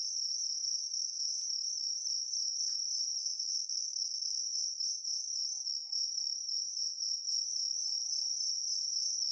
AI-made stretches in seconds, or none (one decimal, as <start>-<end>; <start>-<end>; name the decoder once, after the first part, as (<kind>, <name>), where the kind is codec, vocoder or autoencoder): 0.7-1.2 (codec, SNAC); 3.2-4.4